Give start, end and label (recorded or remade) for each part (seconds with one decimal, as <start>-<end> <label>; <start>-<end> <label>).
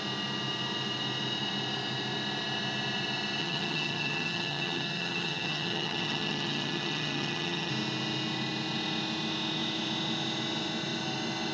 0.0-3.4 recorded; 3.4-7.7 remade; 7.7-11.5 recorded